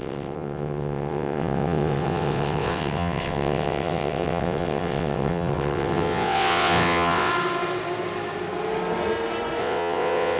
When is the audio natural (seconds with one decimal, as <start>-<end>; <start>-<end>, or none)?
7.3-9.6